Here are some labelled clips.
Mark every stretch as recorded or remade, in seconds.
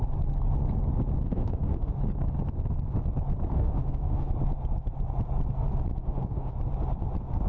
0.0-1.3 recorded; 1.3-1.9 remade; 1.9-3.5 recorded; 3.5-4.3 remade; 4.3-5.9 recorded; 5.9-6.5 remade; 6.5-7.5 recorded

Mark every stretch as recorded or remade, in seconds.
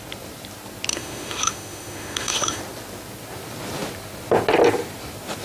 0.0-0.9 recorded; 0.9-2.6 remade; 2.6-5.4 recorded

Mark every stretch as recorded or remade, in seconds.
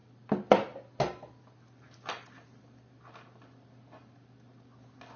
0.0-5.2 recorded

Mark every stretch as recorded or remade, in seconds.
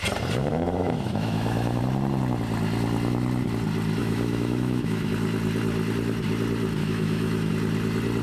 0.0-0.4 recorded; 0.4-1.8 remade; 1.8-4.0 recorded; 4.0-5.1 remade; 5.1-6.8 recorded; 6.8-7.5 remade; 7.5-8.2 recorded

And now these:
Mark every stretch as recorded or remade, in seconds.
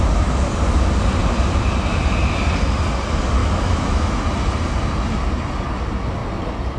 0.0-3.4 recorded; 3.4-4.2 remade; 4.2-6.8 recorded